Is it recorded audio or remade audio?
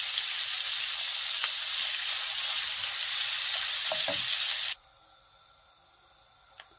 recorded